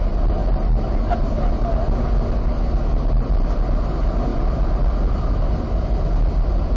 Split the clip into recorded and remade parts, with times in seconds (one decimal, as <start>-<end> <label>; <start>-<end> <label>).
0.0-6.8 recorded